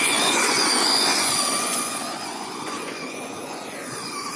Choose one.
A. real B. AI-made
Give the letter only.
B